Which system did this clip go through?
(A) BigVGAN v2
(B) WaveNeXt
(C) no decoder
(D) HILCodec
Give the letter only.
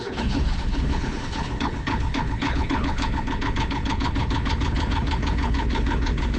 D